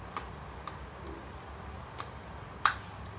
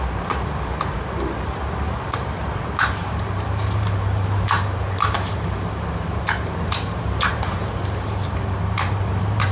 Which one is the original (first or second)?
first